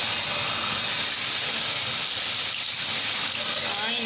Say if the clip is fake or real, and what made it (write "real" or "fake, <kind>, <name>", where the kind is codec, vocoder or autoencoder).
real